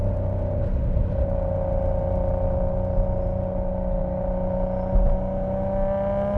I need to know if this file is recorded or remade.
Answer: recorded